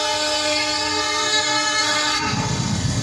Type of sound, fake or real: fake